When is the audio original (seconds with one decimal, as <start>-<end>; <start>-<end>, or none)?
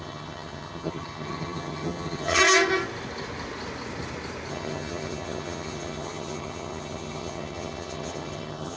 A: 2.4-4.5